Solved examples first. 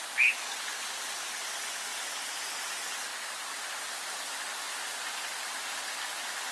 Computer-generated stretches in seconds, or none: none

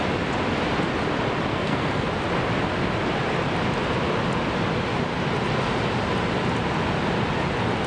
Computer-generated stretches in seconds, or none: 1.5-2.1 (codec, SNAC)

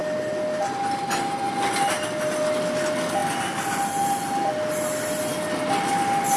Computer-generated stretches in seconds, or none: none